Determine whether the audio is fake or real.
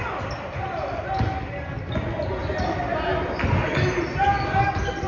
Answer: real